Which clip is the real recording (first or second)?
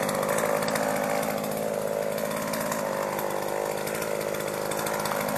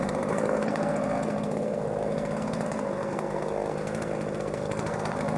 first